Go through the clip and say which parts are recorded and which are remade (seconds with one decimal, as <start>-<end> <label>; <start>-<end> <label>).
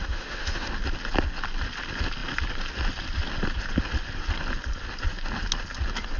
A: 0.0-0.7 remade; 0.7-6.2 recorded